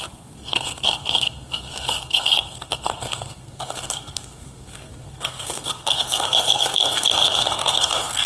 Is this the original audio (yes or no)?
no